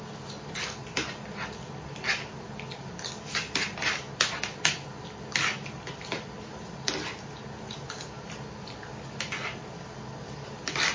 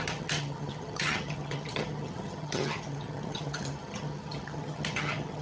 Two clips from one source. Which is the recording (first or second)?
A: first